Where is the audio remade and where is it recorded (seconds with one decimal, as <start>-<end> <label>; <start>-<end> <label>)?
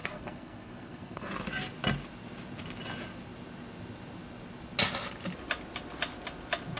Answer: 0.0-1.3 remade; 1.3-6.8 recorded